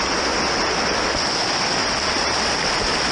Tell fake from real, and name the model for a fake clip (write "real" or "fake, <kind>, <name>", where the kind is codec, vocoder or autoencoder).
real